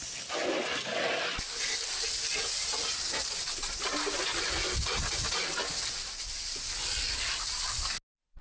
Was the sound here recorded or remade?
recorded